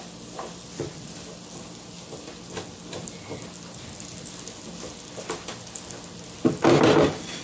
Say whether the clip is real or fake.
real